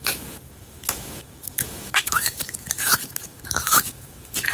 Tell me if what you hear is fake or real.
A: fake